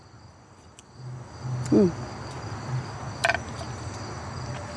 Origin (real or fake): real